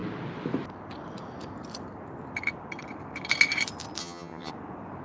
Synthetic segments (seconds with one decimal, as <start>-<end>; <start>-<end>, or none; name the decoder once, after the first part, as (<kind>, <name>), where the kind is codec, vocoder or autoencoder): 4.0-4.5 (vocoder, HiFi-GAN)